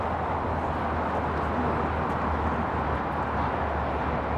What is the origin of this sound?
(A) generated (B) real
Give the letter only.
B